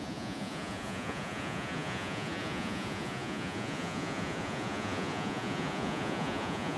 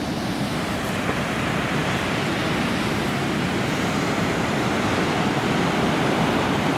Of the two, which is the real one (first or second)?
second